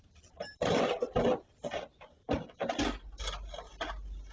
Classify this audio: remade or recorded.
recorded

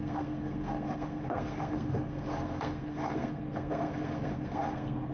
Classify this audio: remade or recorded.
remade